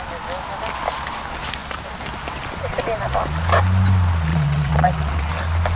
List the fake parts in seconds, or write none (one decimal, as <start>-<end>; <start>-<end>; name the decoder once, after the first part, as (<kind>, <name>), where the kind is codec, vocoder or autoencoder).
4.3-5.3 (vocoder, WaveNeXt)